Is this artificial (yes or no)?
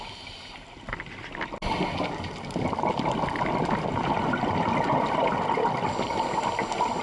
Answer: no